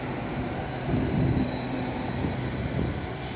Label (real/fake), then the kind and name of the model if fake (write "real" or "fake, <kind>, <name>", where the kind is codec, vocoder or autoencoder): real